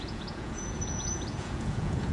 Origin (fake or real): fake